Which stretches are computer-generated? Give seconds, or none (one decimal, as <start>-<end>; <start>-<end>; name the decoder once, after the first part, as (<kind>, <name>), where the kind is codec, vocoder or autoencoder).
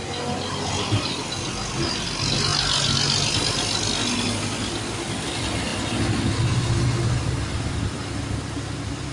none